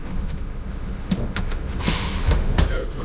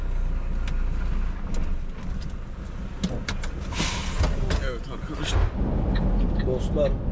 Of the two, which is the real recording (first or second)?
second